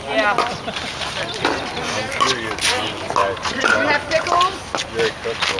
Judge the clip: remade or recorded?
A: recorded